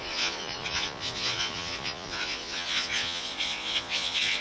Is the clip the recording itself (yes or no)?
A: no